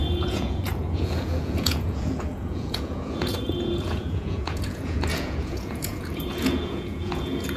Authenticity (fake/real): fake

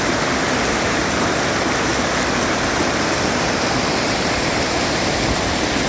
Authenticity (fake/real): real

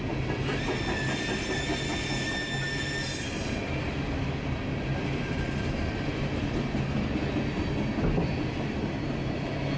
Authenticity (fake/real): real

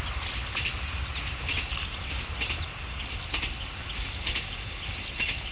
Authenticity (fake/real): real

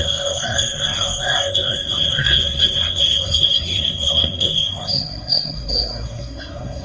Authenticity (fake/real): fake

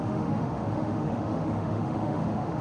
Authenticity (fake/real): fake